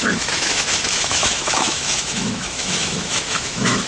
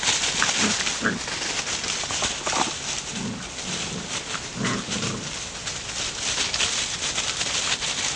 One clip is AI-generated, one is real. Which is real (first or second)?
second